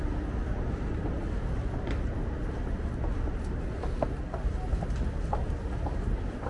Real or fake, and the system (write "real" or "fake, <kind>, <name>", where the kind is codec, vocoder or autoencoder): real